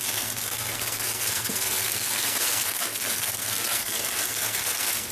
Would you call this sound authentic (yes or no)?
no